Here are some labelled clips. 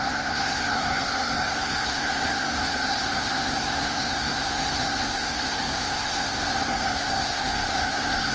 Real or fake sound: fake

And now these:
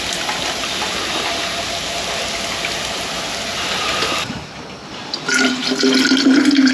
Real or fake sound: real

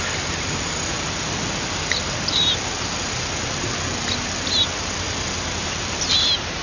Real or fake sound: fake